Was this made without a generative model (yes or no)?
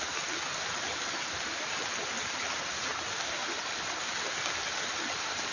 yes